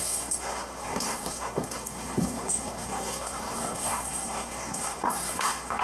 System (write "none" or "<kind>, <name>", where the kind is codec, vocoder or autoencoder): codec, SNAC